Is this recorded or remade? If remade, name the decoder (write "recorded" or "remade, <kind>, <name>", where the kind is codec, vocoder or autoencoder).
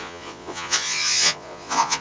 remade, vocoder, Vocos